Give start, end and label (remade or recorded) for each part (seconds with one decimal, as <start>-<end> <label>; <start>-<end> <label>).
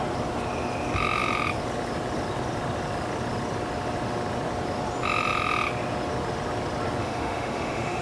0.0-7.0 recorded; 7.0-8.0 remade